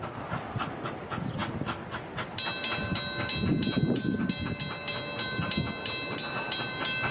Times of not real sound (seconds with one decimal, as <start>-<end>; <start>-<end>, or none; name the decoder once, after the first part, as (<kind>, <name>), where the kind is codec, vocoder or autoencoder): none